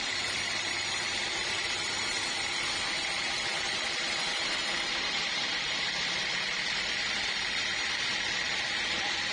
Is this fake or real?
fake